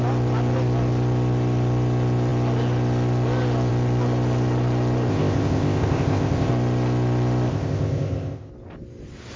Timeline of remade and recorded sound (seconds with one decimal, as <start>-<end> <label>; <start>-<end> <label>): 0.0-5.1 recorded; 5.1-6.5 remade; 6.5-7.5 recorded; 7.5-8.5 remade; 8.5-9.4 recorded